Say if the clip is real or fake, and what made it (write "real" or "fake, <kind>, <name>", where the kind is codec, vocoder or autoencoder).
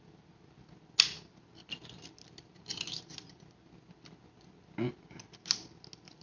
real